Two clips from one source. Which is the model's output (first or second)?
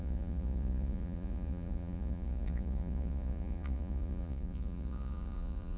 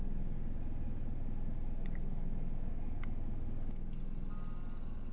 first